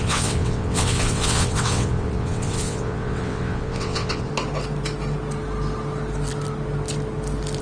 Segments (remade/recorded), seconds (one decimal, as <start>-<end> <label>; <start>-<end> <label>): 0.0-4.3 remade; 4.3-7.6 recorded

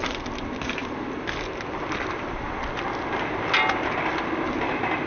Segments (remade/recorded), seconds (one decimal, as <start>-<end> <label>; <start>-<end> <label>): 0.0-5.1 recorded

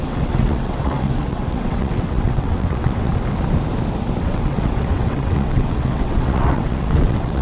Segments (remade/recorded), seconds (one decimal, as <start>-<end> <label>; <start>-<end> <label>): 0.0-3.1 remade; 3.1-4.2 recorded; 4.2-7.4 remade

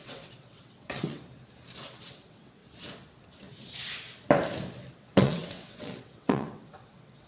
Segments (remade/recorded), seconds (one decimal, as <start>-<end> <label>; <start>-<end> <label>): 0.0-1.2 remade; 1.2-2.0 recorded; 2.0-2.6 remade; 2.6-5.0 recorded; 5.0-7.3 remade

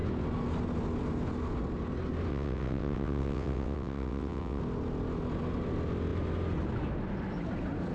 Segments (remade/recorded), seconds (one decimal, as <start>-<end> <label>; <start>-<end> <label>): 0.0-2.3 recorded; 2.3-4.6 remade; 4.6-7.9 recorded

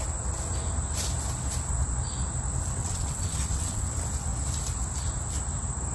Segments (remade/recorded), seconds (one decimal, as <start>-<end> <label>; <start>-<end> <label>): 0.0-2.8 recorded; 2.8-3.9 remade; 3.9-5.9 recorded